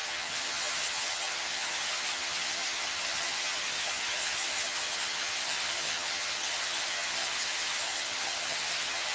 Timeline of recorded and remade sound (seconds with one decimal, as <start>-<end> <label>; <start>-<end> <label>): 0.0-9.1 remade